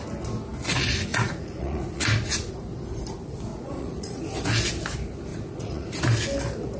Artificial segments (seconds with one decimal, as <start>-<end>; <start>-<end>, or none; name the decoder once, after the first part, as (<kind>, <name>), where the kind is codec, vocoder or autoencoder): 1.1-2.5 (vocoder, Vocos); 3.5-4.2; 5.3-6.0